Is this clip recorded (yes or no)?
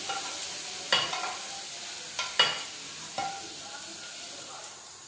yes